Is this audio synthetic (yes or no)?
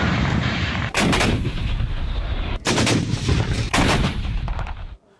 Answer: yes